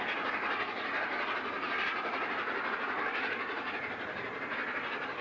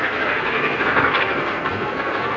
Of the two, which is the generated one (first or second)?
second